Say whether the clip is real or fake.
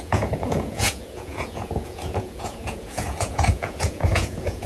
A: fake